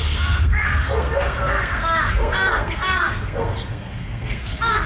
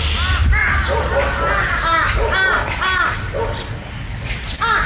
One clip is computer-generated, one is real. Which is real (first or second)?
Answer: second